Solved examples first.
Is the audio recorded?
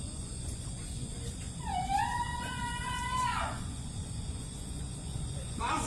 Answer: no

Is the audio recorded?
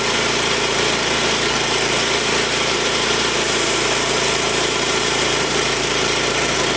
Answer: no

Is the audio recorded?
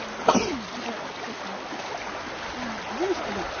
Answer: yes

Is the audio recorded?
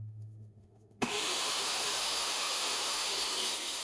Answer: no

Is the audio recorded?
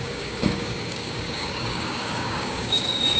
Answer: no